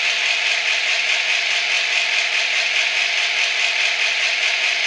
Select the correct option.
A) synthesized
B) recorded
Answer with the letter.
B